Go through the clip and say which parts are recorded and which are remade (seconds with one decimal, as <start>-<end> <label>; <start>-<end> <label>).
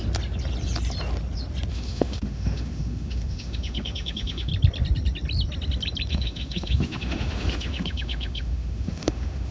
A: 0.0-1.7 recorded; 1.7-4.5 remade; 4.5-6.1 recorded; 6.1-9.5 remade